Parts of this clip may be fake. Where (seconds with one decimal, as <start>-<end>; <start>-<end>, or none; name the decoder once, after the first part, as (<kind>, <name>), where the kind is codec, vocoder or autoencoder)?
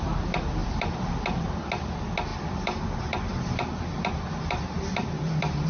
0.6-1.1 (vocoder, BigVGAN v2); 2.3-5.7